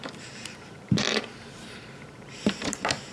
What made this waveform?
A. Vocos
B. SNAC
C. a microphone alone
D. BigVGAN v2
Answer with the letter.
D